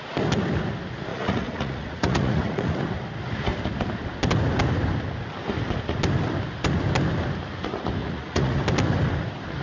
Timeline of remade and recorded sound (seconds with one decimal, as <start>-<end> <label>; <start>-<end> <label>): 0.0-1.1 recorded; 1.1-2.8 remade; 2.8-8.0 recorded; 8.0-8.6 remade; 8.6-9.6 recorded